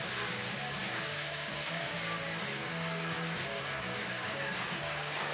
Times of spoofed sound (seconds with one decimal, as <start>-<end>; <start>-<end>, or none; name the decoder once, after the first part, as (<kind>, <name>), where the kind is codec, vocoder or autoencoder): 0.0-5.3 (codec, DAC)